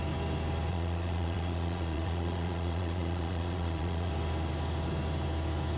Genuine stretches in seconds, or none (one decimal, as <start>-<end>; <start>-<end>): 0.0-0.7; 4.1-5.8